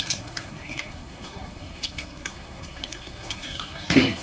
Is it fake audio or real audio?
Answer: fake